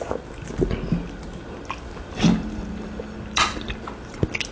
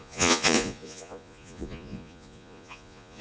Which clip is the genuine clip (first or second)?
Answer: first